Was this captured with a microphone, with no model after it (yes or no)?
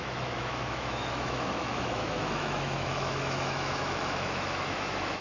no